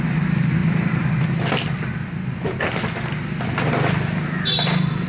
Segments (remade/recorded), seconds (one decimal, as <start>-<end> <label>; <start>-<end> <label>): 0.0-5.1 recorded